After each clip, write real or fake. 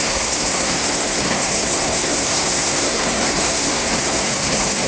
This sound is fake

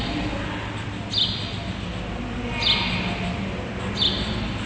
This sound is real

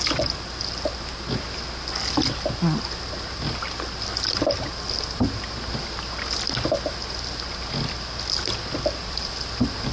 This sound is real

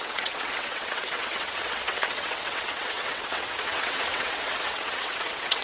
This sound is fake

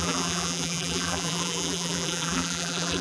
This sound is fake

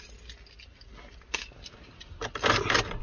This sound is real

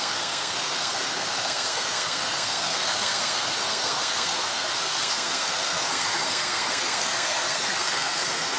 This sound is fake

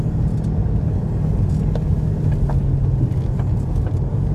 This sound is real